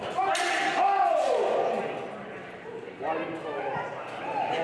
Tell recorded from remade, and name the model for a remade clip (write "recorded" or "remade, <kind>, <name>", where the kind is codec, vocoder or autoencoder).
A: recorded